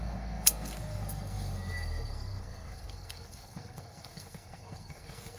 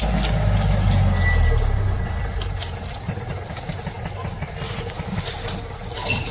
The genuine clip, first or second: second